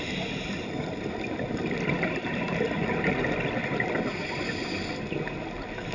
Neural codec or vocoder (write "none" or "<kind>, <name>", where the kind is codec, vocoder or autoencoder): none